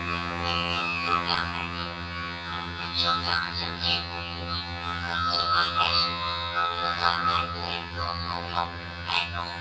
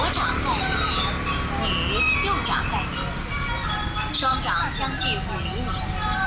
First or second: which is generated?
first